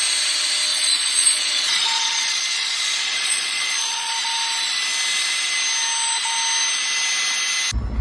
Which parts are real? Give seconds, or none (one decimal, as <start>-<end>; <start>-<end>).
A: 0.0-0.7; 4.1-8.0